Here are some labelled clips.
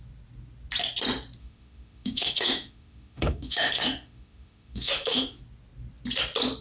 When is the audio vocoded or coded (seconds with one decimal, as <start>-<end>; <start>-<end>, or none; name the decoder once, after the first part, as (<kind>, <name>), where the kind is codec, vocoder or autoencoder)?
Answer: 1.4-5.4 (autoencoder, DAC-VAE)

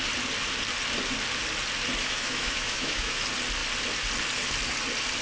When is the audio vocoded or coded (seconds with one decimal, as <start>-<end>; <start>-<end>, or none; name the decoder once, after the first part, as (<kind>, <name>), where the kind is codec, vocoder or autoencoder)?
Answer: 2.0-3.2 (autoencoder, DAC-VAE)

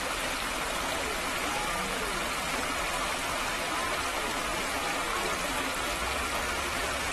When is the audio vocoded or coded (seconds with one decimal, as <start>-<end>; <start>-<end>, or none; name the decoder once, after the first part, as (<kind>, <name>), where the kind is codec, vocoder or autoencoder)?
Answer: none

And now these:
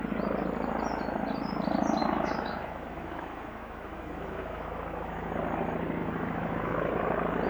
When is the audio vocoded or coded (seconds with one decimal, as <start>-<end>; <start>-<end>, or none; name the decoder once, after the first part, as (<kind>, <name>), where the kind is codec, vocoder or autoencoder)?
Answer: 2.0-5.3 (autoencoder, DAC-VAE); 6.0-6.9

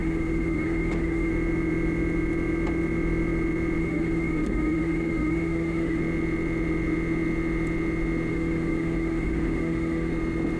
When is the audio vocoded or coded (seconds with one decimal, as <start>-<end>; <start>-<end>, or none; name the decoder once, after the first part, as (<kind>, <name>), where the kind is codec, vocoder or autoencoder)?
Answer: 0.0-1.3 (autoencoder, DAC-VAE); 3.8-6.0; 8.3-10.1

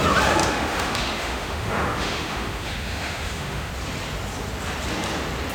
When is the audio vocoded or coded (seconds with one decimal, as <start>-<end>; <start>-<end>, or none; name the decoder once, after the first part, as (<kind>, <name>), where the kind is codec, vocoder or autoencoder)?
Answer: 0.4-3.7 (autoencoder, DAC-VAE)

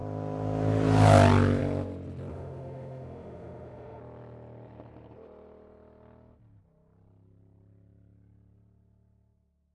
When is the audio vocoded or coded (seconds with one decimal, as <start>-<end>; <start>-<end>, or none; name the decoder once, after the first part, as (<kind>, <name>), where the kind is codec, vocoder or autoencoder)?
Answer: 2.3-4.0 (autoencoder, DAC-VAE)

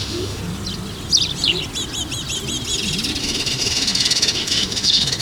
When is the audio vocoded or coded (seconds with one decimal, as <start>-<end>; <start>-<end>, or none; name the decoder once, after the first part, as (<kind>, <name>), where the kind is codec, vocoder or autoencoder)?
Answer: 0.0-0.4 (autoencoder, DAC-VAE); 3.2-5.2